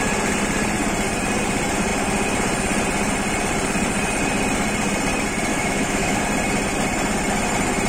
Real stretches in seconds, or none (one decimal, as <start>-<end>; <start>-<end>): 0.0-5.5; 6.2-7.9